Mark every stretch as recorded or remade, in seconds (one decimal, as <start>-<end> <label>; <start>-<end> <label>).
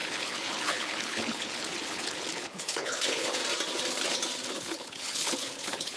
0.0-3.4 remade; 3.4-4.5 recorded; 4.5-6.0 remade